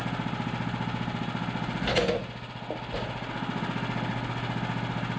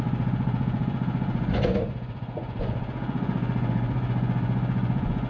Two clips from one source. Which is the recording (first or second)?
first